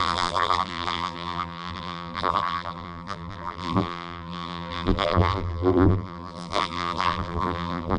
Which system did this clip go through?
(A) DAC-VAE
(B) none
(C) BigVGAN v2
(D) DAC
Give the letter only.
C